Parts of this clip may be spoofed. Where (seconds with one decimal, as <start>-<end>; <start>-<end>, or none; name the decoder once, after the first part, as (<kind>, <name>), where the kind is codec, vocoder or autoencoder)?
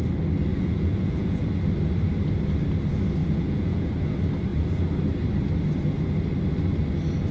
0.5-1.5 (vocoder, Vocos); 3.2-3.9